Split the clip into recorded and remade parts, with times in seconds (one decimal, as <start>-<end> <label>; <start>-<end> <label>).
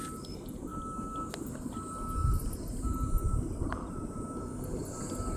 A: 0.0-2.2 recorded; 2.2-4.4 remade; 4.4-5.4 recorded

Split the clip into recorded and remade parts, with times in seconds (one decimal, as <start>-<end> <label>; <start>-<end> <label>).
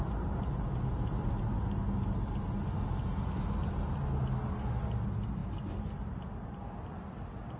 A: 0.0-7.6 recorded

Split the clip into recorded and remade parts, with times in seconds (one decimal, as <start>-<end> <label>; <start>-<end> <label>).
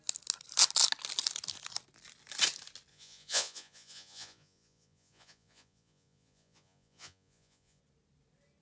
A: 0.0-2.9 recorded; 2.9-7.8 remade; 7.8-8.6 recorded